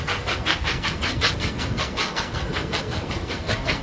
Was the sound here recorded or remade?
remade